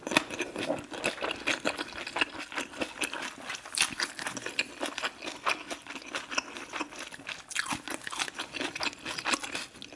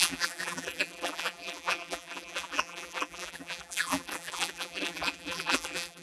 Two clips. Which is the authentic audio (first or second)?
first